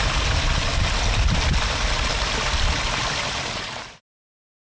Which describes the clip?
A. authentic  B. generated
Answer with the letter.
A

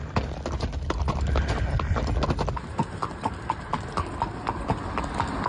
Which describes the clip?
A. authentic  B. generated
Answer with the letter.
A